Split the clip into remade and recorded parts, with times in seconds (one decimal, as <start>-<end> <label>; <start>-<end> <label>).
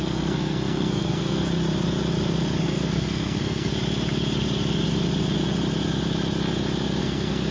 0.0-1.4 remade; 1.4-2.6 recorded; 2.6-3.7 remade; 3.7-7.0 recorded; 7.0-7.5 remade